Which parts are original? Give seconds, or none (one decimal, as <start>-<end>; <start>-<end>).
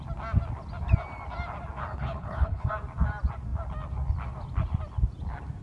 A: 0.0-1.9; 2.7-5.6